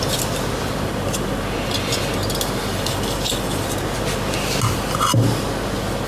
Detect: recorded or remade recorded